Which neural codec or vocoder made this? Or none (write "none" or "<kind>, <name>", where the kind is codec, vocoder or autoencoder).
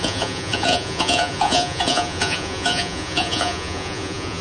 vocoder, Vocos